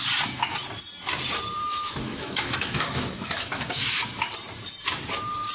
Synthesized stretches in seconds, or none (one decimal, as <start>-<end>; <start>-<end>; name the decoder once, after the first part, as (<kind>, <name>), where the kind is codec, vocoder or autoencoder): 1.6-4.0 (autoencoder, DAC-VAE)